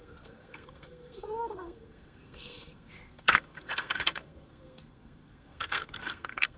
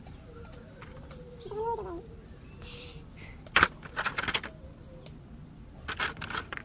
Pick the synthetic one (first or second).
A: first